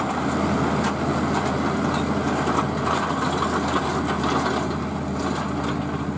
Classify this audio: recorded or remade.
recorded